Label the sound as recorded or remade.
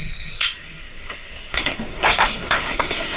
remade